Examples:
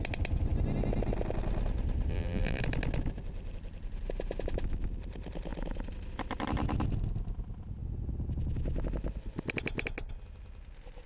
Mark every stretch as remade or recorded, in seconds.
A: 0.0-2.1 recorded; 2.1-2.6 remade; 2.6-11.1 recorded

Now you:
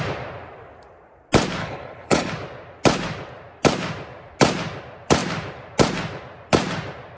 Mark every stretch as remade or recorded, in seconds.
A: 0.0-1.6 recorded; 1.6-2.3 remade; 2.3-7.2 recorded

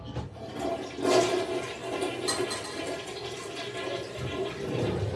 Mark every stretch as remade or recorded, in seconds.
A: 0.0-5.2 recorded

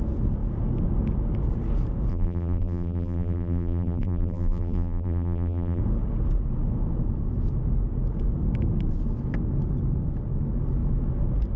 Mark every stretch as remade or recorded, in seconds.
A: 0.0-2.1 recorded; 2.1-5.8 remade; 5.8-11.6 recorded